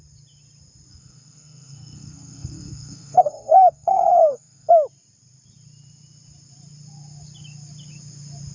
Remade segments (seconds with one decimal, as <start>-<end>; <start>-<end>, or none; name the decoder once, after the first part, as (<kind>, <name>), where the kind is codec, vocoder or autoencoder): 0.9-4.7 (codec, SNAC)